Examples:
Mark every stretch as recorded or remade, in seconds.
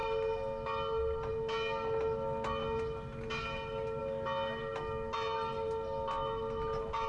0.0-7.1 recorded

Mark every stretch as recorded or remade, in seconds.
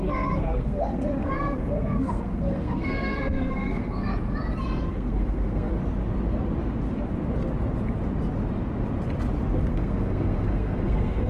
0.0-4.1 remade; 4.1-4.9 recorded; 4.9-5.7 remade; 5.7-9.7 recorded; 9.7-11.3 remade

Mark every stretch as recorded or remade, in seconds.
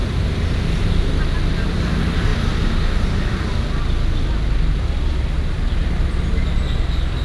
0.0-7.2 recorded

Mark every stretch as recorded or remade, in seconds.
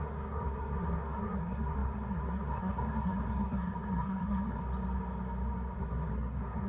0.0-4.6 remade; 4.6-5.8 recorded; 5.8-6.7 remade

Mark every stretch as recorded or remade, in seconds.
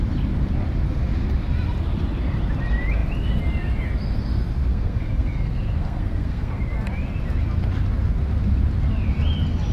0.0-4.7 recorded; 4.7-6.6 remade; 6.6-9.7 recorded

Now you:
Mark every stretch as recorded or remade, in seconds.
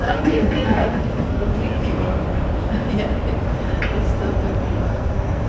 0.0-1.5 remade; 1.5-4.8 recorded; 4.8-5.5 remade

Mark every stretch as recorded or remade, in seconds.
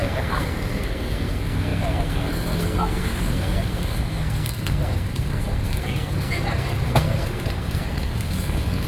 0.0-8.9 remade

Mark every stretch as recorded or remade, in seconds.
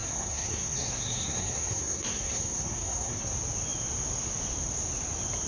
0.0-3.3 remade; 3.3-5.5 recorded